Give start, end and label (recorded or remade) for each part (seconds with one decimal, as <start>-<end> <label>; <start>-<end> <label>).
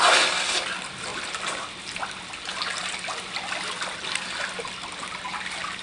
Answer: 0.0-5.8 recorded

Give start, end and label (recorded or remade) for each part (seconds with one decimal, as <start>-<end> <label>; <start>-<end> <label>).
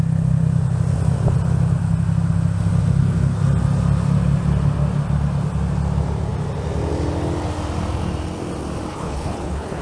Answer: 0.0-8.9 recorded; 8.9-9.8 remade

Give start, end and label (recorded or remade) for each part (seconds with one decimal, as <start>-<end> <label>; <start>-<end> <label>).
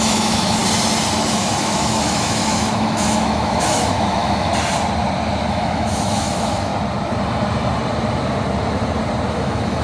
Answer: 0.0-0.6 remade; 0.6-1.3 recorded; 1.3-4.5 remade; 4.5-5.5 recorded; 5.5-6.7 remade; 6.7-9.3 recorded; 9.3-9.8 remade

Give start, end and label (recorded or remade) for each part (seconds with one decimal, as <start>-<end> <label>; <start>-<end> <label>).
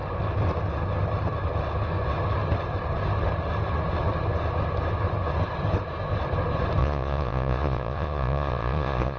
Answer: 0.0-6.8 recorded; 6.8-9.2 remade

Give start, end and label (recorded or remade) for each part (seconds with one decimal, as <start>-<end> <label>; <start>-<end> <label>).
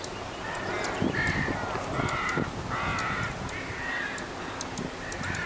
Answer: 0.0-5.5 recorded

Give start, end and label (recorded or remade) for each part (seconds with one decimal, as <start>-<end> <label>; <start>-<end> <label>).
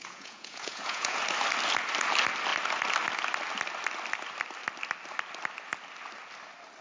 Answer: 0.0-1.2 remade; 1.2-6.8 recorded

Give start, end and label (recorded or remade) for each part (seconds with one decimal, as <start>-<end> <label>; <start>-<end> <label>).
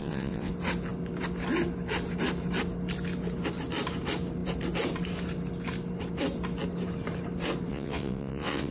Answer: 0.0-0.5 remade; 0.5-7.7 recorded; 7.7-8.7 remade